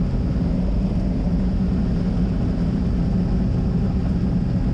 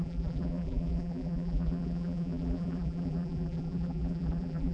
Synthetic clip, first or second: second